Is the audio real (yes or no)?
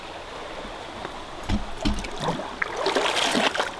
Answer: yes